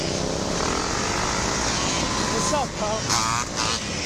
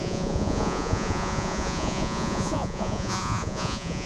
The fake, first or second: second